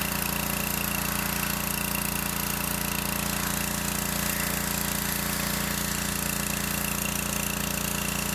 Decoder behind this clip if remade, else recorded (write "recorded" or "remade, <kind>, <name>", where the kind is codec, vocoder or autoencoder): recorded